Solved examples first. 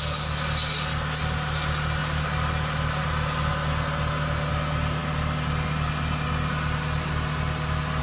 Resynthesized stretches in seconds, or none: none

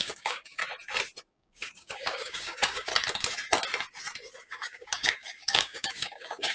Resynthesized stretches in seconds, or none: 0.0-0.6; 1.3-2.9; 4.4-6.5